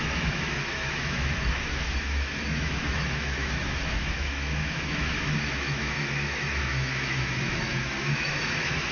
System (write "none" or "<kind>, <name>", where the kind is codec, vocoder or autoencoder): autoencoder, DAC-VAE